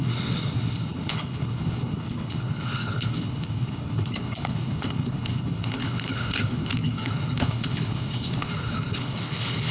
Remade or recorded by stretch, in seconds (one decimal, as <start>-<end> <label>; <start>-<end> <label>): 0.0-9.7 remade